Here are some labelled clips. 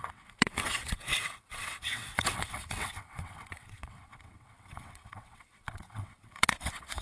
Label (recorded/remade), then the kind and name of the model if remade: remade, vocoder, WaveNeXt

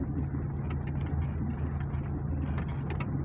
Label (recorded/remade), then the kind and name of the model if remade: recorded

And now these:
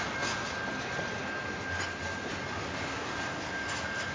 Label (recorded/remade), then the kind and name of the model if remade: recorded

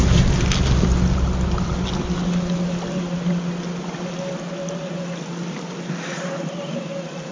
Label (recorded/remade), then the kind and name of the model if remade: recorded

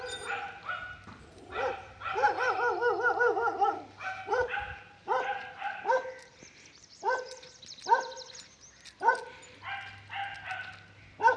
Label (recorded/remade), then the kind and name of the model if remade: recorded